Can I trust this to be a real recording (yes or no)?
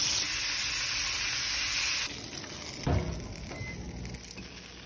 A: yes